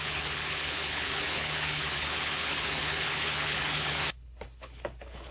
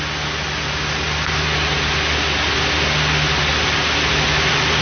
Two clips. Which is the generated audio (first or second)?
first